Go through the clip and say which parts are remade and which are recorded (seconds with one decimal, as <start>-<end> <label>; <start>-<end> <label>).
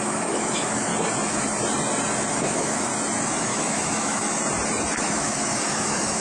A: 0.0-0.9 remade; 0.9-2.3 recorded; 2.3-2.9 remade; 2.9-3.4 recorded; 3.4-4.4 remade; 4.4-5.0 recorded; 5.0-6.2 remade